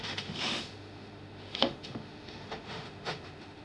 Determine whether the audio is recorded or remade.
remade